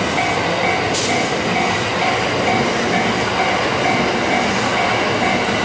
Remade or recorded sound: recorded